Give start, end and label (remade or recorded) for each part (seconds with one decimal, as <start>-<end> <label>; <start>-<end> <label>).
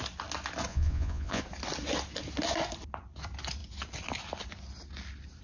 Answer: 0.0-0.7 recorded; 0.7-1.4 remade; 1.4-5.4 recorded